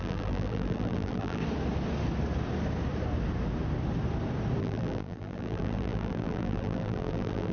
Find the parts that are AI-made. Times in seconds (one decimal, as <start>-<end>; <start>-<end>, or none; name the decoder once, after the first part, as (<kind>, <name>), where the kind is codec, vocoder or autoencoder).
0.0-1.4 (vocoder, BigVGAN v2); 4.6-7.5